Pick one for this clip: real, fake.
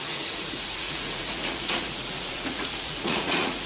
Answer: fake